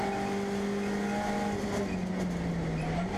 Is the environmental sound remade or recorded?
recorded